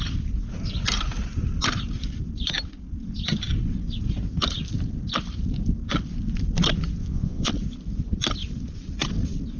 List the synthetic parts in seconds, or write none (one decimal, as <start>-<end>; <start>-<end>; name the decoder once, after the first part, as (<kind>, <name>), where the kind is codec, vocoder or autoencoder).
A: 7.0-7.5 (vocoder, Vocos)